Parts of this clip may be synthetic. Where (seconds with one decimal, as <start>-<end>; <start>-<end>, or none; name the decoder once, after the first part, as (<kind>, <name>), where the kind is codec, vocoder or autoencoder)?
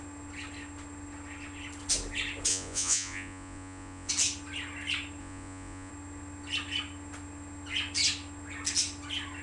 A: 2.5-4.1 (vocoder, Vocos); 5.2-5.9